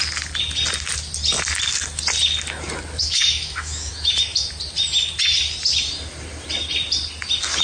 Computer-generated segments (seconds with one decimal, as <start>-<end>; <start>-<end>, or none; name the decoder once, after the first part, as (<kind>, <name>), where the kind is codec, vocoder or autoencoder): 3.0-3.9 (autoencoder, DAC-VAE)